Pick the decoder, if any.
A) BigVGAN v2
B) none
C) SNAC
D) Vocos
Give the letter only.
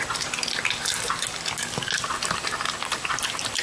B